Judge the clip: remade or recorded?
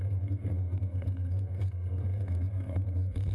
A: remade